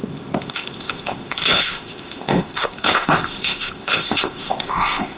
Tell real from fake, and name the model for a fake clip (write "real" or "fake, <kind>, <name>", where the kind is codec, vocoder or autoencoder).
fake, codec, ZipCodec